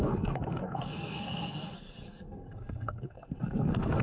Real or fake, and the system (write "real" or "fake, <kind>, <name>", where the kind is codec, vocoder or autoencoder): fake, codec, SNAC